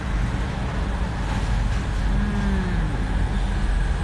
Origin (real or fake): real